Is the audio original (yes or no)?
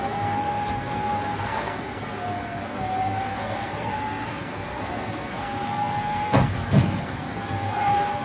no